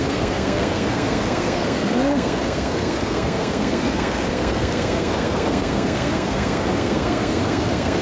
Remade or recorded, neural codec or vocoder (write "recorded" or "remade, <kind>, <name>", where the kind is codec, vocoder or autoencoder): remade, codec, SNAC